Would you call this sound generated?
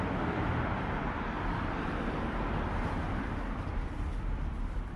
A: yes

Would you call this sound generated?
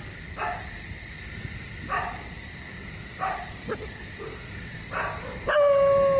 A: no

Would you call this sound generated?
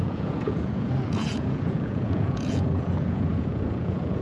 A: yes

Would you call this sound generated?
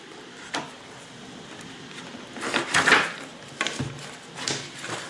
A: no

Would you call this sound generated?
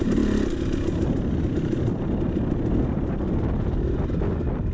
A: no